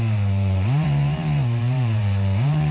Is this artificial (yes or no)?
yes